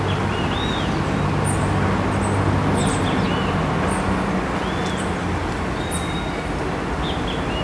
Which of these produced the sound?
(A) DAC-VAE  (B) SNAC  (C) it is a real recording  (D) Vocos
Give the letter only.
C